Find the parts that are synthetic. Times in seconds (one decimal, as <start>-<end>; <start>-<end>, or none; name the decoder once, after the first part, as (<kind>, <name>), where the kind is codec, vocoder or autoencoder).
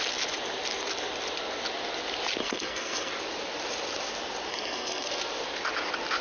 2.4-3.1 (codec, SNAC); 4.5-5.1